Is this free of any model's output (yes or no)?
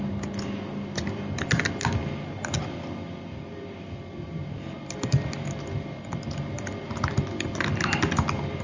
yes